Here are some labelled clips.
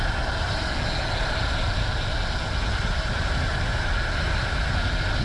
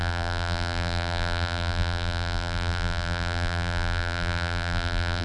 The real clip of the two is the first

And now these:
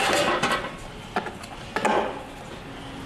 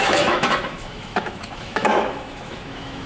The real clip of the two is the first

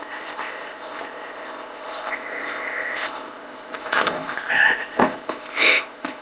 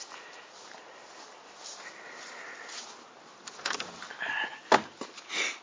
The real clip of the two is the second